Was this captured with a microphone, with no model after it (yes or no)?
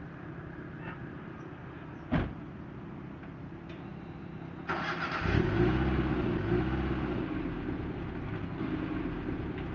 yes